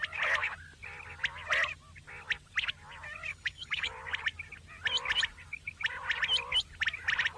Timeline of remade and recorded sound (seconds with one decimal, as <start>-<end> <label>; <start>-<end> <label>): 0.0-3.3 recorded; 3.3-3.9 remade; 3.9-7.4 recorded